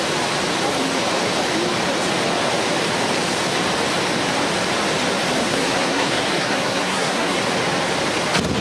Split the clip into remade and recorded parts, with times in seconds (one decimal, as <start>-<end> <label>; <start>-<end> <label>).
0.0-5.4 recorded; 5.4-7.4 remade; 7.4-8.6 recorded